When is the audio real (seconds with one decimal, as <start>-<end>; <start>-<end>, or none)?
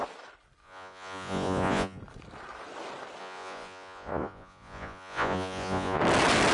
0.0-0.6; 2.0-3.2; 6.0-6.5